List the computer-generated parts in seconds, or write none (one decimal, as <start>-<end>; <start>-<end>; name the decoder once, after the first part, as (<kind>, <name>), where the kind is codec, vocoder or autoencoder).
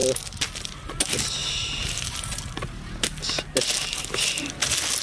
none